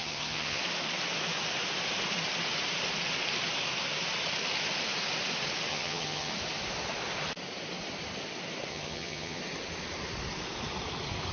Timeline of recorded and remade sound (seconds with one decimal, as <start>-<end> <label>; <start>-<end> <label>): 0.0-0.6 remade; 0.6-5.7 recorded; 5.7-6.3 remade; 6.3-8.7 recorded; 8.7-9.4 remade; 9.4-11.3 recorded